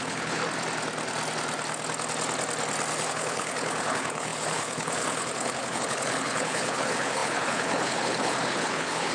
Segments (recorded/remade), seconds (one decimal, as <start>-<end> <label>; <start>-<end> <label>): 0.0-0.4 remade; 0.4-3.1 recorded; 3.1-9.1 remade